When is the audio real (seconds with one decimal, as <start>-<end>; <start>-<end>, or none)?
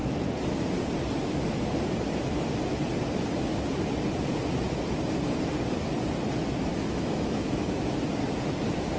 0.0-6.7; 8.1-9.0